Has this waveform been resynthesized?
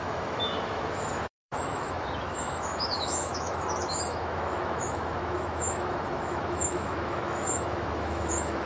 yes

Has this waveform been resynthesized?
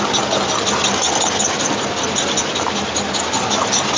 no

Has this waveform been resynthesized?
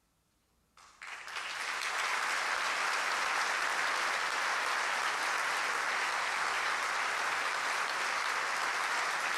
no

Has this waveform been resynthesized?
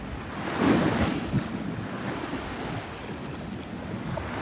no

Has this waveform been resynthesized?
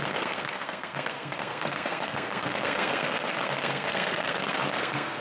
yes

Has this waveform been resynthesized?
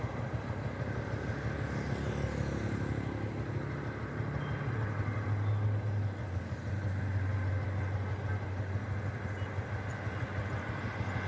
no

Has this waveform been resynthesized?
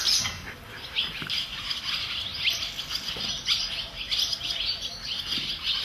no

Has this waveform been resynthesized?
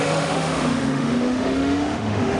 yes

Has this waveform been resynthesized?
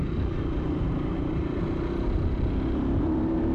yes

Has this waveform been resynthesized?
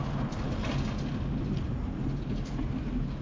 no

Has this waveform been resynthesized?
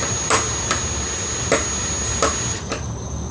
no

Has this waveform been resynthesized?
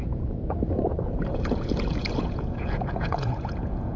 yes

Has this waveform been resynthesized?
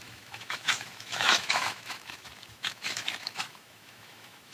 yes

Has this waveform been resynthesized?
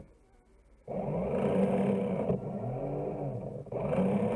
no